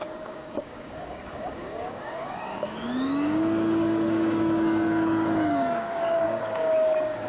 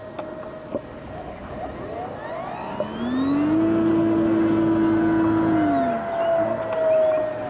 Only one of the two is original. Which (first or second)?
second